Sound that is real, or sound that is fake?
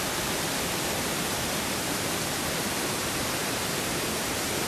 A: fake